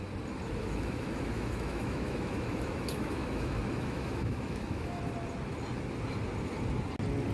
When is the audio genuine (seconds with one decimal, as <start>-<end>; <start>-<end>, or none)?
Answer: 0.0-0.6; 5.0-7.3